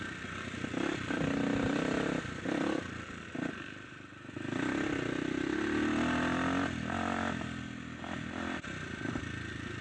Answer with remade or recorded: recorded